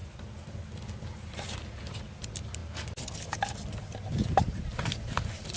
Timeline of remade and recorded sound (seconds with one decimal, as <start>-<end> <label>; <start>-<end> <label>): 0.0-1.8 recorded; 1.8-2.6 remade; 2.6-3.2 recorded; 3.2-5.6 remade